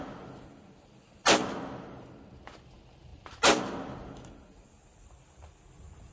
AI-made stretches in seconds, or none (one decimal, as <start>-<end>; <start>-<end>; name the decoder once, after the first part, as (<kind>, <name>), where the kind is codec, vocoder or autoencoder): none